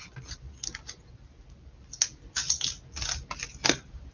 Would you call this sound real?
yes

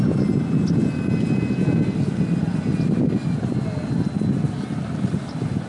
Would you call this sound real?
yes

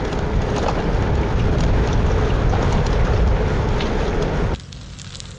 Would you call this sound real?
yes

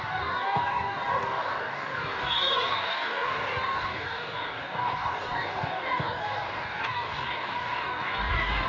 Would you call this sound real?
no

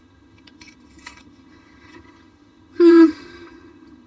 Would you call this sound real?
no